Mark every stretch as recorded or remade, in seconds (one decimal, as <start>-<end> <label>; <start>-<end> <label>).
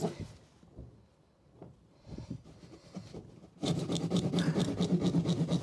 0.0-1.6 recorded; 1.6-4.5 remade; 4.5-5.6 recorded